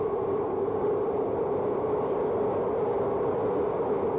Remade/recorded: remade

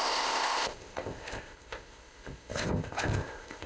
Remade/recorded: remade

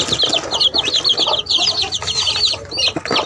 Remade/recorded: recorded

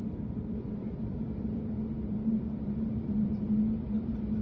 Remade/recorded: remade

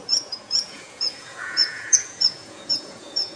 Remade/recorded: remade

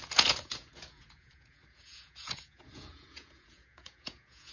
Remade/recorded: remade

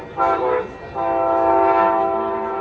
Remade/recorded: recorded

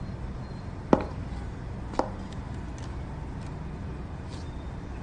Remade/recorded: recorded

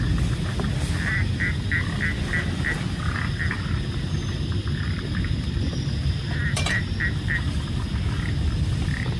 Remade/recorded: recorded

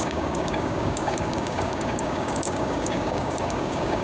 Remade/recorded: remade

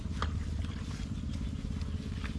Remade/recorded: recorded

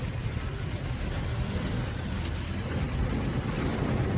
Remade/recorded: remade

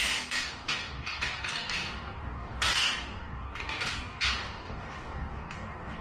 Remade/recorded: remade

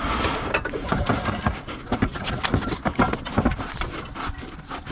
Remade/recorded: recorded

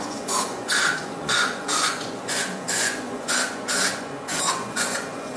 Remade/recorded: remade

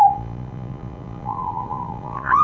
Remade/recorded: remade